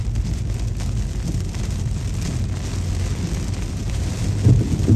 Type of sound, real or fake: real